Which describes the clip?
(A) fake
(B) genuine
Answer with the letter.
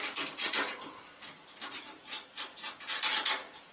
B